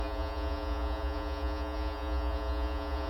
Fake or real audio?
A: fake